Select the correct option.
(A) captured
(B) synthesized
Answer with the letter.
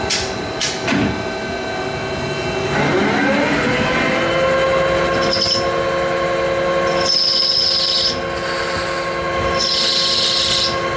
A